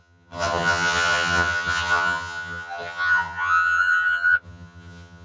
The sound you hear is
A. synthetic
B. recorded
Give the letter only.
A